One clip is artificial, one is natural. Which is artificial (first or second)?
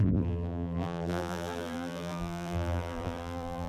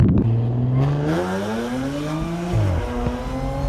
first